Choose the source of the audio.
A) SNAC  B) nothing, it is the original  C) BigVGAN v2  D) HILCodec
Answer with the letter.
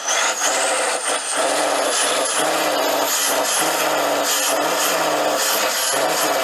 B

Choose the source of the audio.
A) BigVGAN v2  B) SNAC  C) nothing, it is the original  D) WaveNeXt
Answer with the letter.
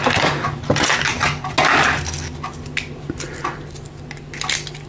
C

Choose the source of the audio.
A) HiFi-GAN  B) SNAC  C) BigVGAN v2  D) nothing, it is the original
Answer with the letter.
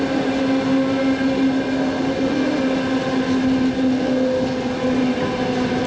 D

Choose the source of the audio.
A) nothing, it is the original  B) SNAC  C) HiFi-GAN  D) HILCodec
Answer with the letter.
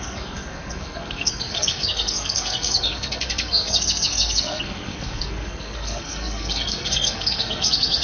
B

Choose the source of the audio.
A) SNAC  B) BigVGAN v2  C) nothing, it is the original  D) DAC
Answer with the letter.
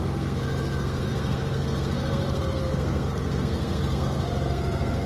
A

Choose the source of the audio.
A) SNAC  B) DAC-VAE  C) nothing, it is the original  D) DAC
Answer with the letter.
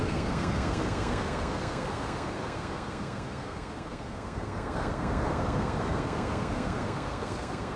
A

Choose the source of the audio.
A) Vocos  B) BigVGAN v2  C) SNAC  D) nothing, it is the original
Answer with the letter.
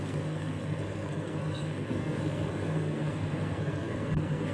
C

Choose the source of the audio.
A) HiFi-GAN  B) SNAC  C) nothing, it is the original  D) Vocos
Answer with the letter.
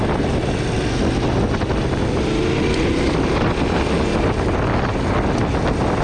C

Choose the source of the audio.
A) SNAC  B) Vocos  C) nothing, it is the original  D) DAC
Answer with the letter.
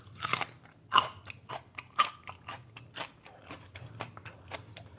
C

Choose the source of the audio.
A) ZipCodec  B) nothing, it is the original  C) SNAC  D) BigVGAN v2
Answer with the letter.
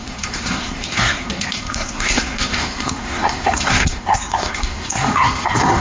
C